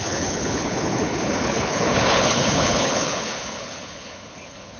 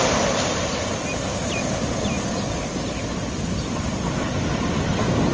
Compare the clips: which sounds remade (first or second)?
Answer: first